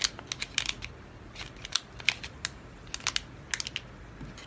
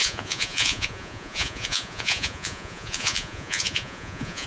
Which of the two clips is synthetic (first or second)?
second